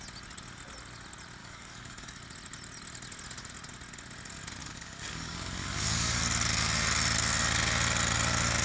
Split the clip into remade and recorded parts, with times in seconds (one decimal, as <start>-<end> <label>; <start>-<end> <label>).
0.0-1.4 recorded; 1.4-2.2 remade; 2.2-4.6 recorded; 4.6-6.2 remade; 6.2-8.6 recorded